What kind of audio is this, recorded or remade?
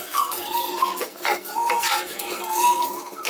remade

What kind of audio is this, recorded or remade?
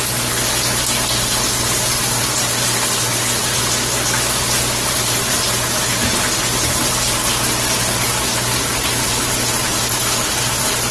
recorded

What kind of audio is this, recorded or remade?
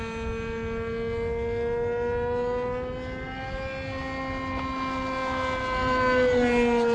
recorded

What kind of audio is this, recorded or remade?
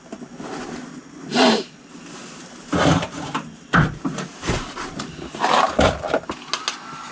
recorded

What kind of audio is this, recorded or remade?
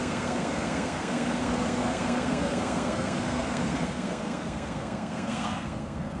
remade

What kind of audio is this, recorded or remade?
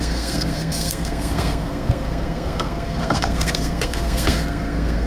remade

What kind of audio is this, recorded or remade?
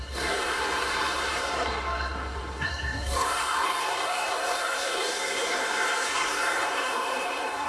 remade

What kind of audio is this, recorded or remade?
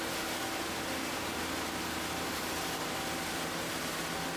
recorded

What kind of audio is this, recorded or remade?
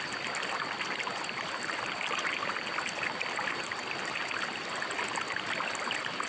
recorded